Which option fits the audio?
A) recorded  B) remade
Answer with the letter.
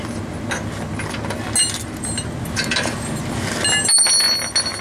A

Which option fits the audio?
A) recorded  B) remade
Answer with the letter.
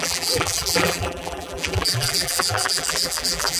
B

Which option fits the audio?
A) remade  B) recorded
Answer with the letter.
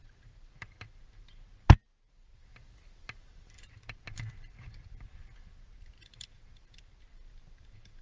B